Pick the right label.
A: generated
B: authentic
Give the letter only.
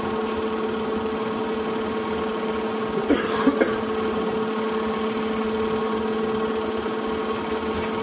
B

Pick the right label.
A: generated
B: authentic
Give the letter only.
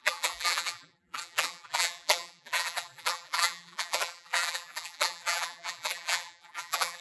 A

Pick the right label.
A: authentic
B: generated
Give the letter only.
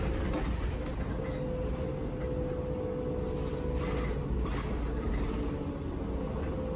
A